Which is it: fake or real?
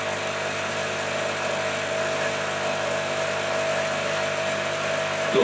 real